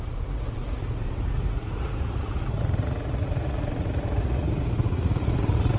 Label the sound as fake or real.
fake